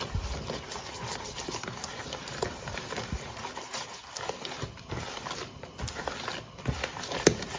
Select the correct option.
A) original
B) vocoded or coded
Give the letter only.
A